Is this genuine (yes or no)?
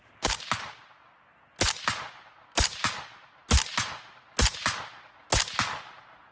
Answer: yes